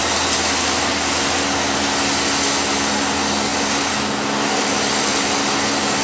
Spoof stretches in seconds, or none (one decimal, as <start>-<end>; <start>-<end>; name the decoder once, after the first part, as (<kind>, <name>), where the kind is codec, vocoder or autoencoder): none